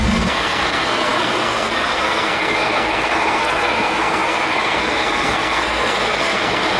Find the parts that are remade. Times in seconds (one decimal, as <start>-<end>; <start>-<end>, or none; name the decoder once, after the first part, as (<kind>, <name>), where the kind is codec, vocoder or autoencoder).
0.0-6.8 (codec, SNAC)